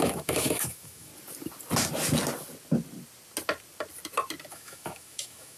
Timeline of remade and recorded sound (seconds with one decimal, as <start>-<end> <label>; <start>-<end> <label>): 0.0-1.1 remade; 1.1-4.5 recorded; 4.5-5.6 remade